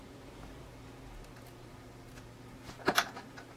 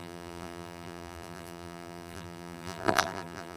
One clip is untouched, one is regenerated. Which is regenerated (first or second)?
second